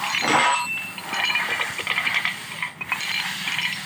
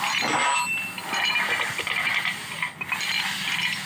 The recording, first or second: second